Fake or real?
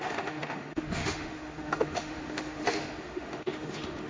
fake